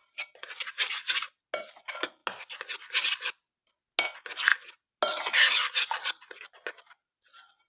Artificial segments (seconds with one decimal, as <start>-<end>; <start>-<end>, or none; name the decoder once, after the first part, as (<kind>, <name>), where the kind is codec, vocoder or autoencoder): none